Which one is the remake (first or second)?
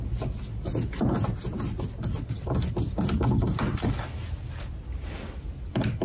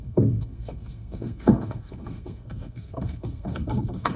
second